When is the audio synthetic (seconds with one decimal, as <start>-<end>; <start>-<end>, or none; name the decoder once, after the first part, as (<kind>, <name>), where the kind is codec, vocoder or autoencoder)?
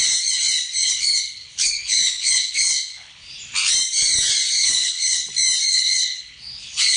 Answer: 0.8-3.3 (codec, HILCodec); 4.6-5.3; 5.7-7.0